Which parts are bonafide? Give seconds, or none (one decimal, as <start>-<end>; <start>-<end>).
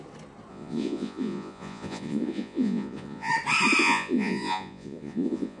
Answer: 0.0-0.5; 3.3-3.8